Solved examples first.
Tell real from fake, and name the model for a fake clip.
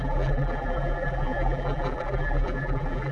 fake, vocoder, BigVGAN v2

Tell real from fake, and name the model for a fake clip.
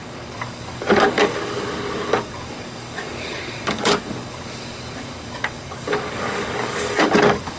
fake, codec, DAC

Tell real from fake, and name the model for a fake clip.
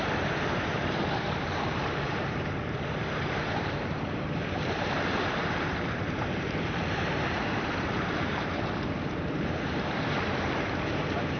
fake, vocoder, BigVGAN v2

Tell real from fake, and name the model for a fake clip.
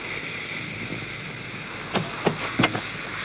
real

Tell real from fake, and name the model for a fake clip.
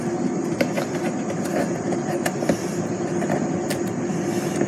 real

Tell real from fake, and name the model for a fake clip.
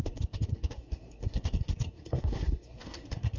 fake, codec, SNAC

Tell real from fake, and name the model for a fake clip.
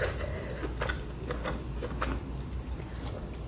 real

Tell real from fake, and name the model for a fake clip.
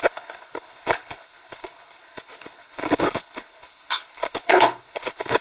fake, codec, HILCodec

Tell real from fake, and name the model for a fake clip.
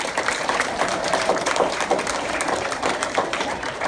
fake, vocoder, BigVGAN v2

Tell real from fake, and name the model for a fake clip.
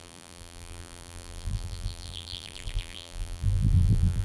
fake, vocoder, BigVGAN v2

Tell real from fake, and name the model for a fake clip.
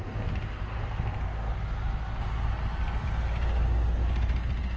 real